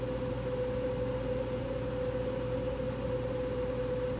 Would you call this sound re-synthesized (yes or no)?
no